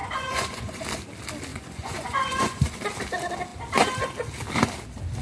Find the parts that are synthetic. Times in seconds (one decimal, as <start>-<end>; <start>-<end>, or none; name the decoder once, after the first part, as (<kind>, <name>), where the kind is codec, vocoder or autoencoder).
0.0-0.8 (vocoder, Vocos); 1.5-2.6